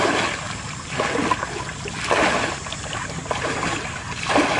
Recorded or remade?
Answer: recorded